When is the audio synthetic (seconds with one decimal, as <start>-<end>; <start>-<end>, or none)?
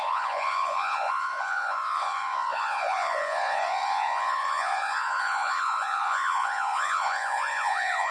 0.0-8.1